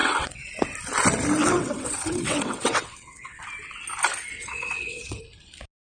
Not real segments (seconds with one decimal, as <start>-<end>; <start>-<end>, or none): 0.0-0.5; 1.4-3.4; 4.3-5.2